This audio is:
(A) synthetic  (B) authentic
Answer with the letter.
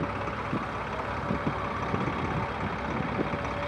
B